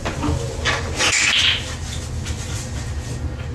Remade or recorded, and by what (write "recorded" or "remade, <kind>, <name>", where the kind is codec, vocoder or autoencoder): recorded